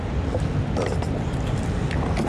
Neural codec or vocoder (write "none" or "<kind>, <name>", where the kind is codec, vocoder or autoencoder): none